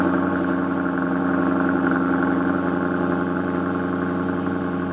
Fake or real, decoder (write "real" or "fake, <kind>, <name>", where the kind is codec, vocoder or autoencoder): real